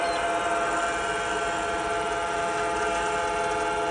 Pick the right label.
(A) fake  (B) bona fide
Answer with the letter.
B